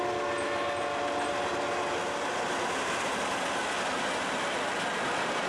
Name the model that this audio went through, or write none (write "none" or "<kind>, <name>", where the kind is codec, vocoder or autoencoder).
none